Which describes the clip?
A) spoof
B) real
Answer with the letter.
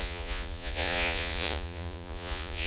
A